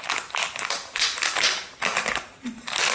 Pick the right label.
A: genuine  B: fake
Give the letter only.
A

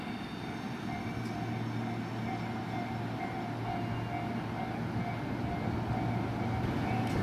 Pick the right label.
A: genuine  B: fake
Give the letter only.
A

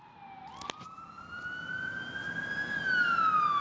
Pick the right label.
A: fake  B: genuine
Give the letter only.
B